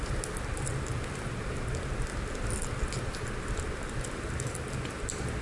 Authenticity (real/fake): real